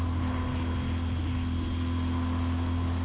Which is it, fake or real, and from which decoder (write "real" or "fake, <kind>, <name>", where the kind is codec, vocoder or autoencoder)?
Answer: real